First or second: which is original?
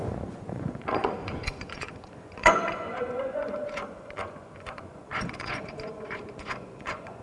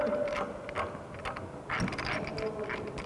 second